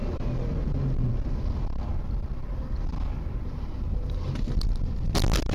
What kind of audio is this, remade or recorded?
recorded